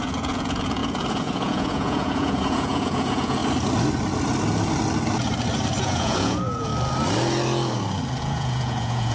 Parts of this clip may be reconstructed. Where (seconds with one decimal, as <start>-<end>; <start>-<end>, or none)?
0.0-3.4; 5.8-6.7; 8.2-9.1